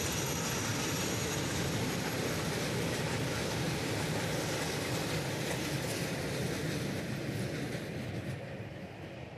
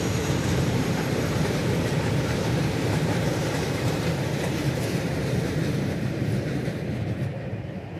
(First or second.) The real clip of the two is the first